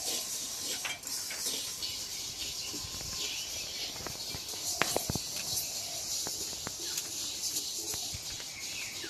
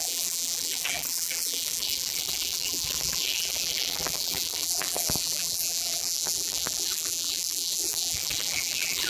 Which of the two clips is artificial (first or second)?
second